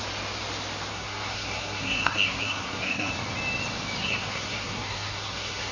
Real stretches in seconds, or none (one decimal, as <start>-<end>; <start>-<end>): 0.0-0.9; 3.1-4.0